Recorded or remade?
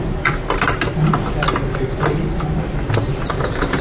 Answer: recorded